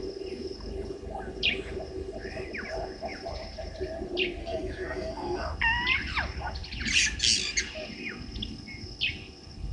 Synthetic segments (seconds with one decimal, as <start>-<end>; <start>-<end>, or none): 4.4-5.5